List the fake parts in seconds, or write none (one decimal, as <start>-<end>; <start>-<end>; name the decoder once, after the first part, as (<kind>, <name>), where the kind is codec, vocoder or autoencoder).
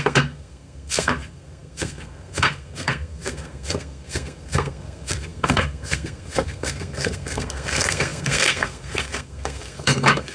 0.0-10.3 (codec, SNAC)